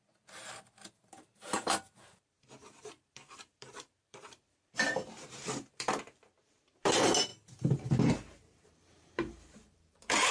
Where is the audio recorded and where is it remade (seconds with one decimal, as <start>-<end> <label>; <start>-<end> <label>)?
0.0-7.3 remade; 7.3-8.6 recorded; 8.6-10.3 remade